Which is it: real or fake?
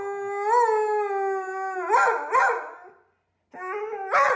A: real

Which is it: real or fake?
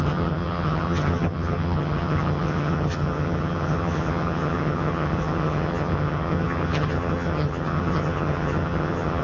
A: fake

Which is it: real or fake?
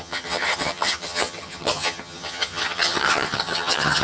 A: fake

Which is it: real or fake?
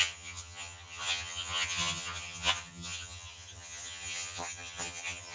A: fake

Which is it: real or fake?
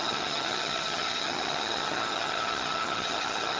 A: fake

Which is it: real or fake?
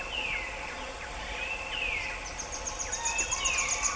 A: real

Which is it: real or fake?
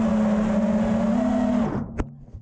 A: real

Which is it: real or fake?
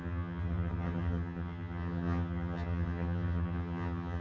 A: fake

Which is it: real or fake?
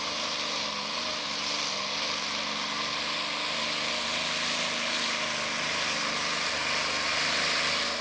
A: real